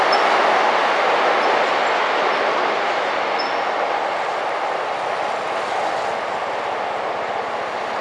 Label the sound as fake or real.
real